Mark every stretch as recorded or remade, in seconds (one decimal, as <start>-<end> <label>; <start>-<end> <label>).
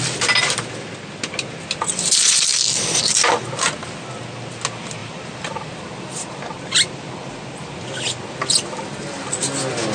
0.0-5.0 recorded; 5.0-6.4 remade; 6.4-9.9 recorded